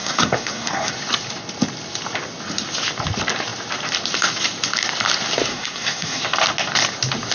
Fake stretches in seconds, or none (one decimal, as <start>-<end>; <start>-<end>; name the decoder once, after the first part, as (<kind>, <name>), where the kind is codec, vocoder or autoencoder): 0.0-0.9 (codec, SNAC); 5.5-6.2